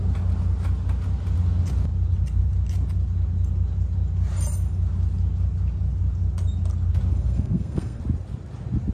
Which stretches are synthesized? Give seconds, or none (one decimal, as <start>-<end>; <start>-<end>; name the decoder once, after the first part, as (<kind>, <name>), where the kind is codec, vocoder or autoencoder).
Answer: 7.1-8.0 (codec, SNAC)